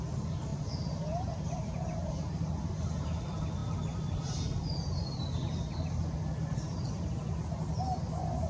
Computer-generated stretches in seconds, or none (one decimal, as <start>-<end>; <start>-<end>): 0.5-2.3